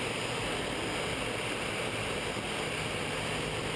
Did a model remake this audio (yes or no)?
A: no